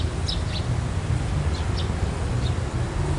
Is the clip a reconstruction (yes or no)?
no